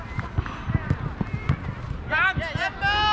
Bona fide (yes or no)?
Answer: yes